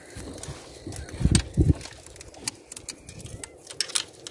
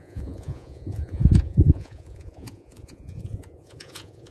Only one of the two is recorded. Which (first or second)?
first